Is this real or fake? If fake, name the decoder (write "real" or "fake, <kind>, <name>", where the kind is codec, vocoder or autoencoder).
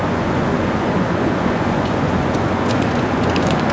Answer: fake, vocoder, Vocos